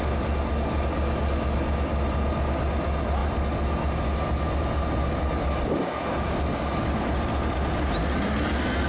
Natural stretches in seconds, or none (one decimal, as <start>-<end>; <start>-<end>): 0.0-8.9